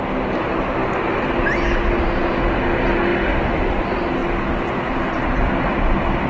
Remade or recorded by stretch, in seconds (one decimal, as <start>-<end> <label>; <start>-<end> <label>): 0.0-6.3 recorded